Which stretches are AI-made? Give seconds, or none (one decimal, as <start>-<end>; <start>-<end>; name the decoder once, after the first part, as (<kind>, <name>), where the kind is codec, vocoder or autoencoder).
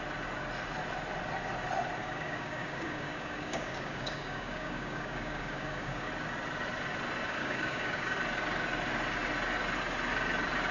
2.0-6.1 (codec, DAC); 7.4-8.2